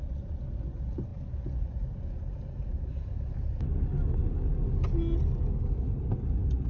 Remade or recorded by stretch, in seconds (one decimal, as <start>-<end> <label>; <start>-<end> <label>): 0.0-6.7 recorded